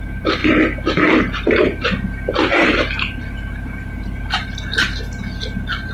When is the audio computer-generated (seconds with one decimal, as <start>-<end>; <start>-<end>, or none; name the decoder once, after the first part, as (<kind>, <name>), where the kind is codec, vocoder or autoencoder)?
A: 0.4-3.9 (vocoder, BigVGAN v2)